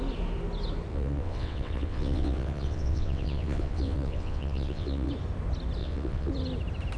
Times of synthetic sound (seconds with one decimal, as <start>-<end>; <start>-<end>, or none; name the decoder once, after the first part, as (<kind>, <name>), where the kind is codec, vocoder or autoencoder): 0.9-5.1 (vocoder, WaveNeXt); 5.8-6.3